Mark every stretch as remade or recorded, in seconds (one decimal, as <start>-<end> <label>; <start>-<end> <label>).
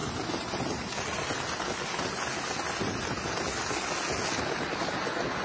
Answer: 0.0-5.4 recorded